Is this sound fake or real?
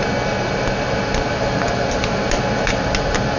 real